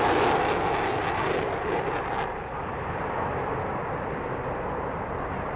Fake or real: real